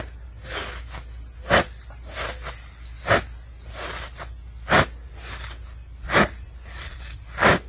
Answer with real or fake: real